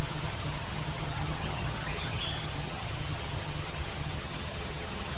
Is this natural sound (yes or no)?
no